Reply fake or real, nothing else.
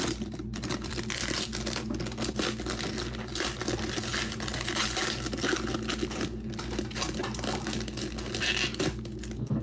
real